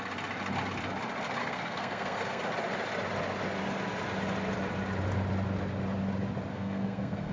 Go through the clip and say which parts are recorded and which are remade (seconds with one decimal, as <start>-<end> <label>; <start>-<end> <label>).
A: 0.0-1.4 recorded; 1.4-2.4 remade; 2.4-6.5 recorded; 6.5-7.3 remade